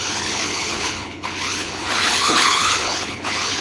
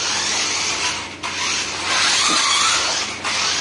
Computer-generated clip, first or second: first